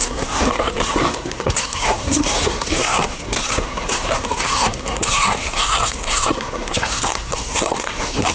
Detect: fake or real fake